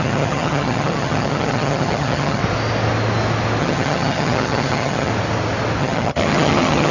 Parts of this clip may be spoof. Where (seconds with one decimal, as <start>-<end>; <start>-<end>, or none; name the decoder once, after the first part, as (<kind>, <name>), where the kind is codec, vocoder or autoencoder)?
0.0-2.4 (vocoder, HiFi-GAN); 3.6-5.1; 5.8-6.9

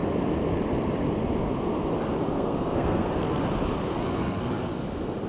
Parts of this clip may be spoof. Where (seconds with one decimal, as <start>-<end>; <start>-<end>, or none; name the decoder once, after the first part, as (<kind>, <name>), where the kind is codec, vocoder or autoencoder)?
2.3-3.4 (codec, SNAC); 4.0-4.7

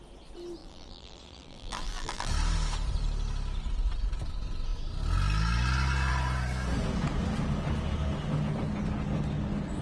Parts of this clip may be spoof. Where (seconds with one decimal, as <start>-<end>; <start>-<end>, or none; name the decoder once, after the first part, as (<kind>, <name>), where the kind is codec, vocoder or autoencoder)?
0.6-2.3 (vocoder, BigVGAN v2)

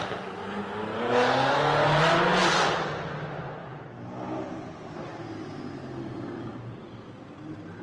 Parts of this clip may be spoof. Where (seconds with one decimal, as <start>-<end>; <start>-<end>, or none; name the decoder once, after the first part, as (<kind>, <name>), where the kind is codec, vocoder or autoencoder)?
none

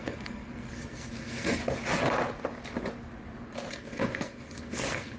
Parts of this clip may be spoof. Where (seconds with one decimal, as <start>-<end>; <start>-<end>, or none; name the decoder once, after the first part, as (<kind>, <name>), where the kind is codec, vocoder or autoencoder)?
0.0-1.6 (codec, SNAC); 3.7-5.2

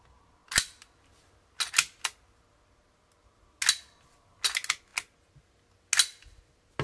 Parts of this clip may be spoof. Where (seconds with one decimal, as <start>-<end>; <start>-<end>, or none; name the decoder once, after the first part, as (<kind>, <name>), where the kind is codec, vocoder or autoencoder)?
none

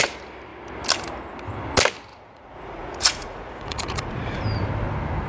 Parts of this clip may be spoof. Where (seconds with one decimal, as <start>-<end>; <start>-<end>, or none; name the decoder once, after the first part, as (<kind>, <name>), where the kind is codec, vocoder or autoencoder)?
2.1-4.4 (vocoder, Vocos)